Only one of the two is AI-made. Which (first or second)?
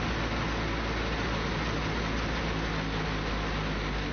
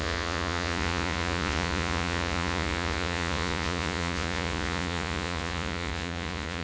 second